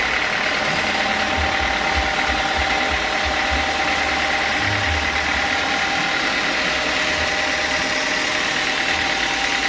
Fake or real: real